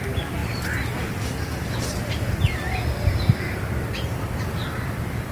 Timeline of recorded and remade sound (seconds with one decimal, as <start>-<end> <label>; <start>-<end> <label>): 0.0-5.3 recorded